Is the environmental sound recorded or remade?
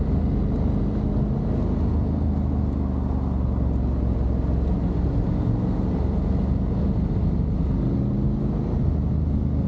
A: recorded